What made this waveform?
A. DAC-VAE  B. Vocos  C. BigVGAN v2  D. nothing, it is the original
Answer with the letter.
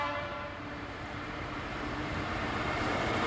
C